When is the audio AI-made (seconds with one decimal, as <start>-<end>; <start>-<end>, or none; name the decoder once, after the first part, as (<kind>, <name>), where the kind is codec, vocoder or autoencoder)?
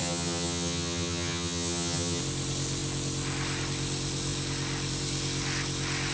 0.0-2.2 (vocoder, HiFi-GAN)